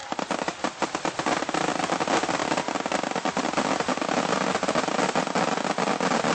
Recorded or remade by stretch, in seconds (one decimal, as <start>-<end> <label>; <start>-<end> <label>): 0.0-6.3 recorded